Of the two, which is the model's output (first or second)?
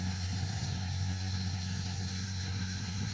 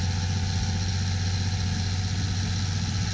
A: first